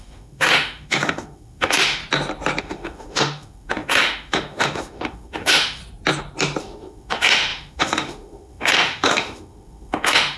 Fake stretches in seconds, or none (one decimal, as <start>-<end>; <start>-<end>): 0.0-2.0; 2.6-5.8; 6.6-10.4